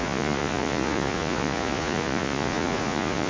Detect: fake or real fake